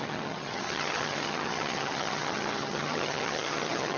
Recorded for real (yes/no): no